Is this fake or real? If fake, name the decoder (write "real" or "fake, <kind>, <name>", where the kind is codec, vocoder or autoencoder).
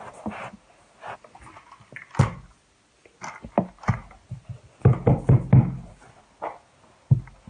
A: real